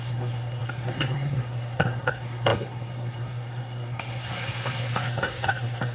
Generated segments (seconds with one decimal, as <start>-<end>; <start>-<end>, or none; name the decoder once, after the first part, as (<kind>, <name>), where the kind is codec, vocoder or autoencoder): 0.0-5.9 (codec, SNAC)